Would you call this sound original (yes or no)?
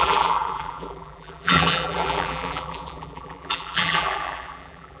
no